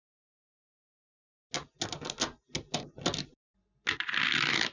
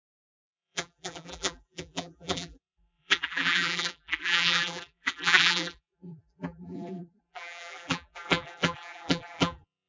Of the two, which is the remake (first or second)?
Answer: second